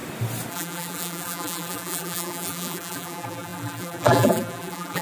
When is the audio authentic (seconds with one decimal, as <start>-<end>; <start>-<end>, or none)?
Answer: 0.0-0.5